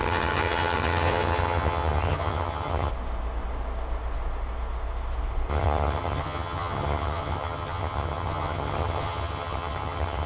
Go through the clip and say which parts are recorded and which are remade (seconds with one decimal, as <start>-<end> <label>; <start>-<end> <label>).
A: 0.0-2.9 remade; 2.9-5.5 recorded; 5.5-10.3 remade

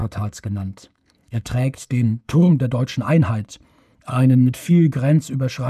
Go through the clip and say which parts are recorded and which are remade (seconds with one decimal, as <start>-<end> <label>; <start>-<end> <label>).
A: 0.0-2.5 remade; 2.5-4.1 recorded; 4.1-4.7 remade; 4.7-5.7 recorded

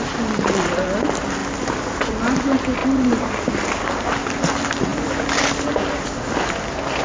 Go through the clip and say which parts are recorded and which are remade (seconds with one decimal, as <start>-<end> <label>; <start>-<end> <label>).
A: 0.0-7.0 recorded

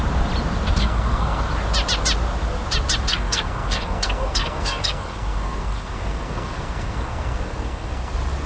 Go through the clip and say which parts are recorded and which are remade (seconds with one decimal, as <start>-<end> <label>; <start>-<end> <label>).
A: 0.0-0.8 recorded; 0.8-1.4 remade; 1.4-3.1 recorded; 3.1-8.1 remade; 8.1-8.5 recorded

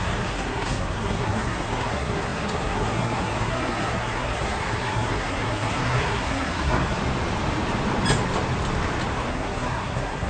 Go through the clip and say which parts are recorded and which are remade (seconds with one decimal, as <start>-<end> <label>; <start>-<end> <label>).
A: 0.0-7.0 remade; 7.0-9.3 recorded; 9.3-10.3 remade

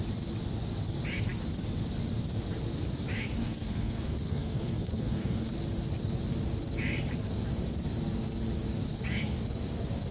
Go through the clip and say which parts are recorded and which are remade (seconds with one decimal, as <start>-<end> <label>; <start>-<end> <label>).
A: 0.0-3.4 recorded; 3.4-5.5 remade; 5.5-10.1 recorded

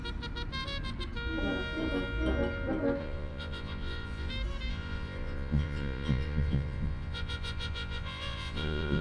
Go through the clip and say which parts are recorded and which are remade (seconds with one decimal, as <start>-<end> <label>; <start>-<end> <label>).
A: 0.0-3.0 recorded; 3.0-4.3 remade; 4.3-4.7 recorded; 4.7-9.0 remade